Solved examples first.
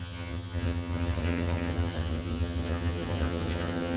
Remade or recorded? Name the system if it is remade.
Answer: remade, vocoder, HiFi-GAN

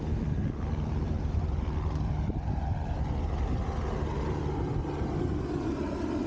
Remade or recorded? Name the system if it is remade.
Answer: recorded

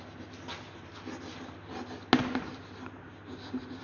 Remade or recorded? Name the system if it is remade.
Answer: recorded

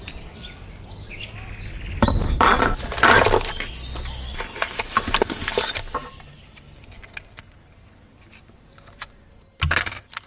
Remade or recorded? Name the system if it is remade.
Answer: recorded